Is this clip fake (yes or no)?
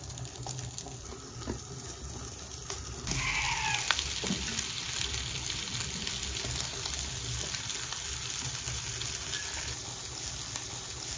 no